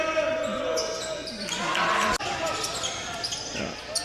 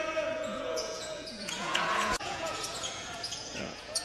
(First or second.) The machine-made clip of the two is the second